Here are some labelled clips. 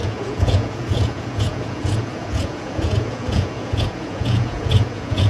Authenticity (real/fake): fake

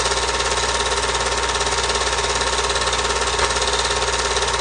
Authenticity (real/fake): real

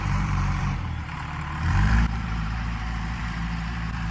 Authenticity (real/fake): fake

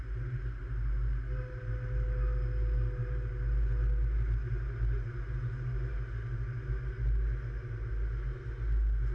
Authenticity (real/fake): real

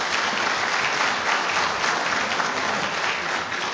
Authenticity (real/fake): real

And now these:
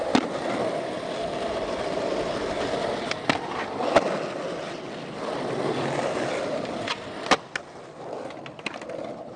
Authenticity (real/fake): real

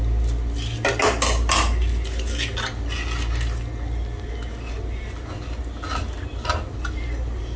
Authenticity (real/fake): real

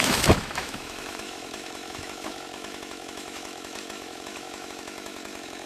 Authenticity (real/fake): fake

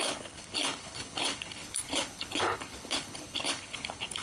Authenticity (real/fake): fake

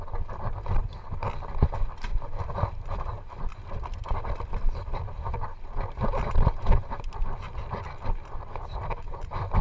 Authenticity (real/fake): real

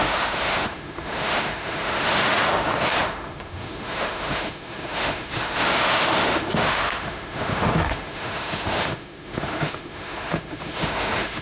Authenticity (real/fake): fake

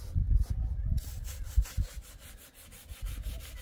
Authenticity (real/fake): real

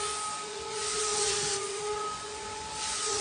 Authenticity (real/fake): fake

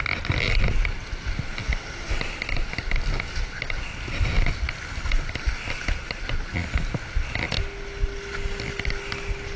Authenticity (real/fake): real